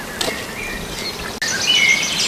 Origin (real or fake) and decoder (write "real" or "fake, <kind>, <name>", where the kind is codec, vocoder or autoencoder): real